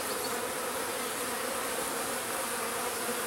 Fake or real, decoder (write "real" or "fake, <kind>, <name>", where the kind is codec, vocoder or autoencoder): real